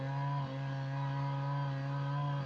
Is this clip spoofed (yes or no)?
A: no